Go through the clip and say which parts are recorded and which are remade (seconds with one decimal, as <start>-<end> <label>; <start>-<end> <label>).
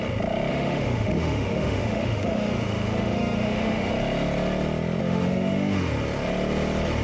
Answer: 0.0-0.5 recorded; 0.5-3.9 remade; 3.9-5.0 recorded; 5.0-5.9 remade; 5.9-7.0 recorded